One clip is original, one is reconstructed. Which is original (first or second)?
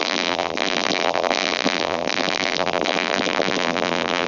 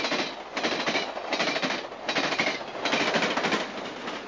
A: second